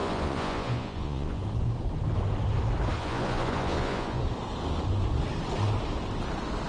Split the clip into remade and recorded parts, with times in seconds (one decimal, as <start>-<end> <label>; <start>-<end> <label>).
0.0-1.4 remade; 1.4-3.0 recorded; 3.0-4.2 remade; 4.2-6.7 recorded